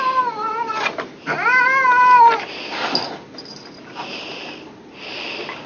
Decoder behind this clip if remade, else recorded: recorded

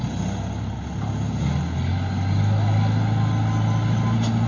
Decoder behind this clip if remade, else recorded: recorded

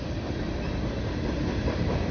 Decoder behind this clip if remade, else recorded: recorded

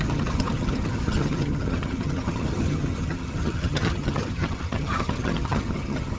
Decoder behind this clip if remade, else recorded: remade, vocoder, HiFi-GAN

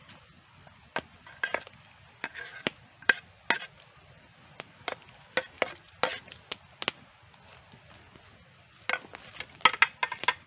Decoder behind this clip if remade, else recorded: recorded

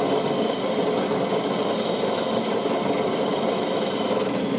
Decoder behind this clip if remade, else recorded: recorded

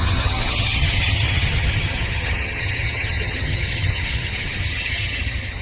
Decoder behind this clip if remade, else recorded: remade, vocoder, HiFi-GAN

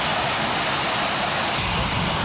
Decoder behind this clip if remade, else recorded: recorded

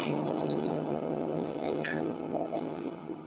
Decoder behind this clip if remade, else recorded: remade, vocoder, HiFi-GAN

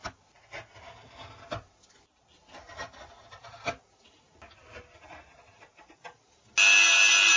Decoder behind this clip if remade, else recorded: recorded